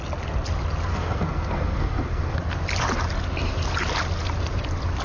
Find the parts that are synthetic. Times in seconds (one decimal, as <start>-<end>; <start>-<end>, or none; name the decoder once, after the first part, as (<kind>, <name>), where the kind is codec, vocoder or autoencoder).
0.9-2.4 (codec, SNAC)

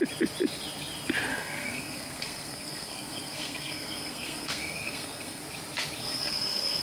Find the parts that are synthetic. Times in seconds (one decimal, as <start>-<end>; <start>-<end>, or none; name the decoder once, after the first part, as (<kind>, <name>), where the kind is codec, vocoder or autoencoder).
1.3-5.4 (codec, SNAC); 6.0-6.8